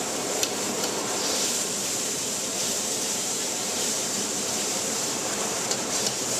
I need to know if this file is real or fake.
fake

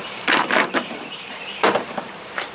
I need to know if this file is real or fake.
fake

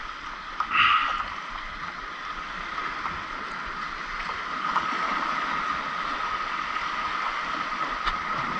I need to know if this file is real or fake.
real